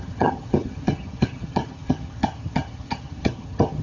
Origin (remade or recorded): remade